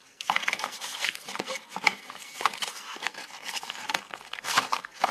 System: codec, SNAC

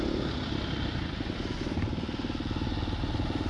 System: none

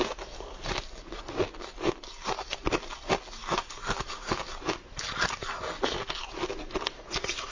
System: none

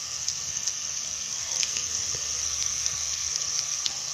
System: codec, SNAC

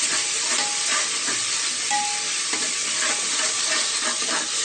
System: none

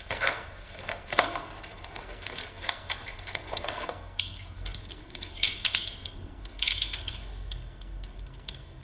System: codec, SNAC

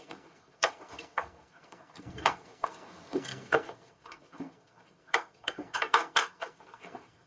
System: codec, SNAC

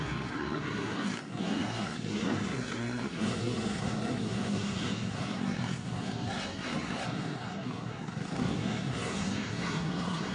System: codec, SNAC